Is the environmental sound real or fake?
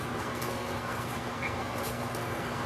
fake